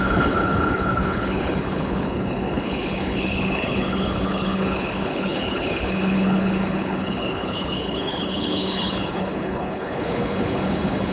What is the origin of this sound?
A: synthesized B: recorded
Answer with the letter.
A